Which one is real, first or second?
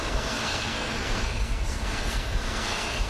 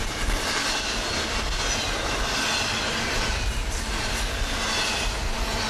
second